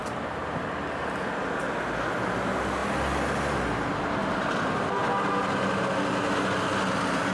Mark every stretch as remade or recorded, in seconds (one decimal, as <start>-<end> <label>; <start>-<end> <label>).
0.0-7.3 recorded